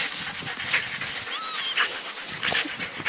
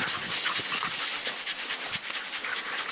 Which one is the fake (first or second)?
second